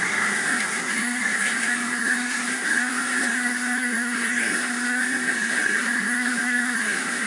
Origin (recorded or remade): remade